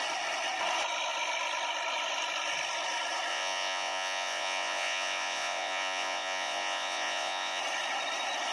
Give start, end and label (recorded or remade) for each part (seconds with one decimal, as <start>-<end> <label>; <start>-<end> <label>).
0.0-3.3 recorded; 3.3-7.6 remade; 7.6-8.5 recorded